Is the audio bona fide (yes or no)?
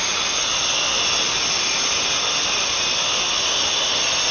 yes